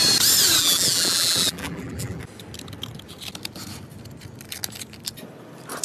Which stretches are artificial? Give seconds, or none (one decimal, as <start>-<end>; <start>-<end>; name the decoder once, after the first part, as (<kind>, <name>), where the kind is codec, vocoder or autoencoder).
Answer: 0.6-2.2 (vocoder, BigVGAN v2)